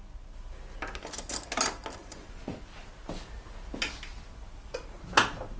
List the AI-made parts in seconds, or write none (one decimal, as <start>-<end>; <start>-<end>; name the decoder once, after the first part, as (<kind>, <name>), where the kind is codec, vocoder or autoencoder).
2.0-2.6 (vocoder, Vocos)